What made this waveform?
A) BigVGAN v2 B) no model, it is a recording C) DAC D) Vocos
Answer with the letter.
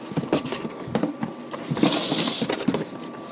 B